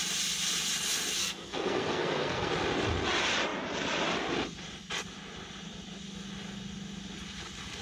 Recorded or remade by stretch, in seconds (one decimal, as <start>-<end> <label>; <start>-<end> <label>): 0.0-1.2 recorded; 1.2-2.5 remade; 2.5-7.8 recorded